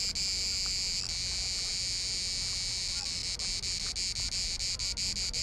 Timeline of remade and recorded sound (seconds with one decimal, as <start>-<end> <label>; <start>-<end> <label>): 0.0-5.4 recorded